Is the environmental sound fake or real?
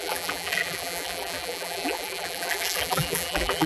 fake